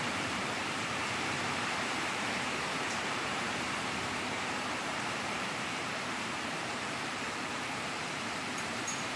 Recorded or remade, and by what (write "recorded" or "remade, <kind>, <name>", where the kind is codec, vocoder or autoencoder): remade, vocoder, BigVGAN v2